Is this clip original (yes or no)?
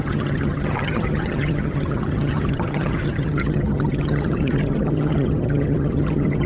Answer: no